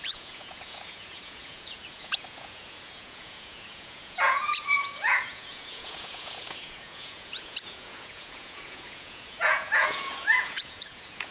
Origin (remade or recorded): remade